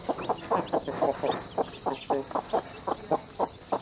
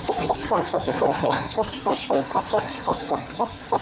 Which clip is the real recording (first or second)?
first